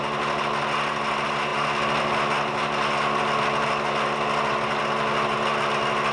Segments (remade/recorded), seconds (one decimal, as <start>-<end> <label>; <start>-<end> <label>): 0.0-6.1 recorded